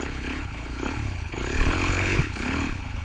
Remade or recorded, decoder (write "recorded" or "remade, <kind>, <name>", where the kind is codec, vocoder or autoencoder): remade, codec, HILCodec